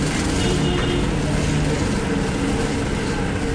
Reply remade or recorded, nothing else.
recorded